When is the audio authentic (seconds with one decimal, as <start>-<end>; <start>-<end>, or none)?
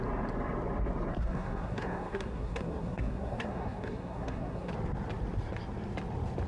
0.0-1.1; 4.7-6.5